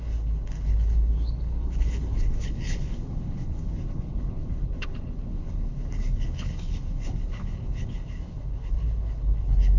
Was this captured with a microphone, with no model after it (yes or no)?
no